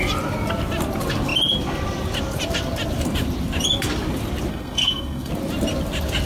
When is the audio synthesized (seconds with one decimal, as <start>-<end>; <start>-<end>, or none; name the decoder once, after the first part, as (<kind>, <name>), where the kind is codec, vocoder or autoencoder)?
4.5-5.3 (codec, SNAC)